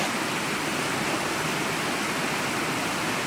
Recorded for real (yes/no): yes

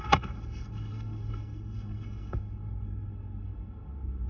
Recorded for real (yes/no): no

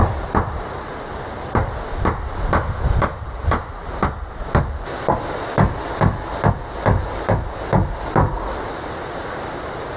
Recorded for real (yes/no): yes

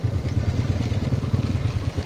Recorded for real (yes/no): yes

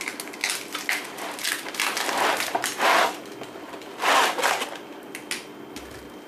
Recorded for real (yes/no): yes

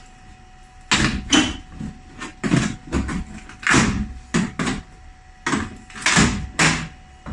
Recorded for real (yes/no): yes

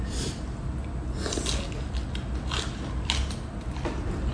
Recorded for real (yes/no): yes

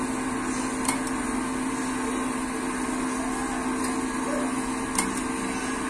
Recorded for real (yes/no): yes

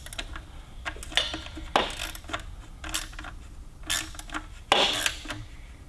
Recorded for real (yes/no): yes